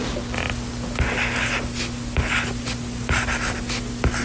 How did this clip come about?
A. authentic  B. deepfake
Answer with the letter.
A